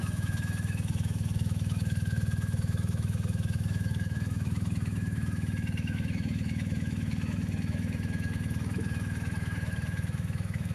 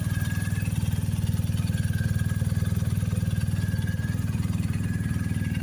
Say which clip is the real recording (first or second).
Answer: second